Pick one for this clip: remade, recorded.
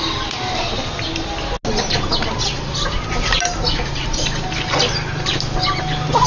recorded